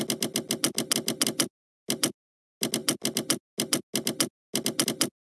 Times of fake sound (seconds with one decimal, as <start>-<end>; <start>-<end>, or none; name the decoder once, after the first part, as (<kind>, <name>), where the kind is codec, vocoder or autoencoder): none